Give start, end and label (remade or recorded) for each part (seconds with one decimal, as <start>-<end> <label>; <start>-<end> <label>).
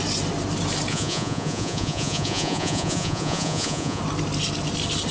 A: 0.0-0.9 recorded; 0.9-4.0 remade; 4.0-5.1 recorded